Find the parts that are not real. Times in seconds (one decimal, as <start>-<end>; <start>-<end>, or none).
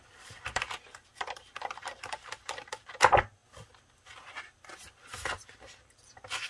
0.0-3.4; 4.4-6.5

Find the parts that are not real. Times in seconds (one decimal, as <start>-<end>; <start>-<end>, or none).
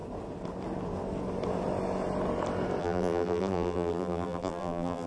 2.8-5.1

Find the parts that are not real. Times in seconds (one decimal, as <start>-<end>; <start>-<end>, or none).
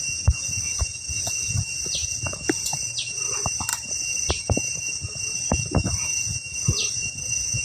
2.0-2.7; 3.7-4.3; 6.8-7.6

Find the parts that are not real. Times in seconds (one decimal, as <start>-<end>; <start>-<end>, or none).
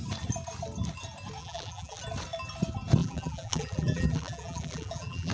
1.4-2.0; 3.0-5.3